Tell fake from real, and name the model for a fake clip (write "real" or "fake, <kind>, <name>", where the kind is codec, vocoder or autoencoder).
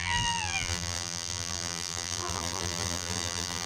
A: fake, vocoder, BigVGAN v2